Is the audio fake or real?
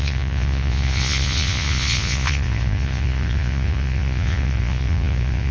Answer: fake